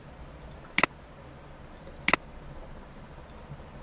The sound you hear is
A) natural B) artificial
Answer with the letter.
A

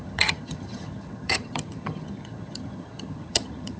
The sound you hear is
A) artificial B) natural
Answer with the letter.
A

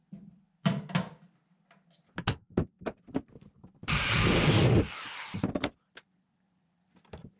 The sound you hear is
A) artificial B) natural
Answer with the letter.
B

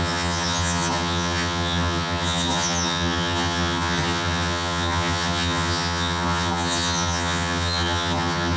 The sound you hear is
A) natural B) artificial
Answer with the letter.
B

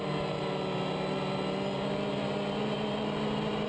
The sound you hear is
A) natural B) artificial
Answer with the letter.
A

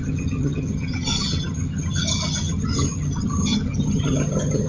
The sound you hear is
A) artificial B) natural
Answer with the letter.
A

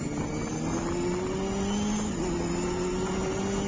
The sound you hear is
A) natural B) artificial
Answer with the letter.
A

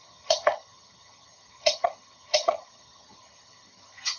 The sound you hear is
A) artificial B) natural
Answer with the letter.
A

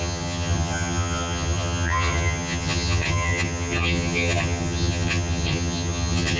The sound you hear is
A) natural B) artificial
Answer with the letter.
B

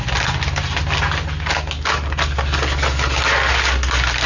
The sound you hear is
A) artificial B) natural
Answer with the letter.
B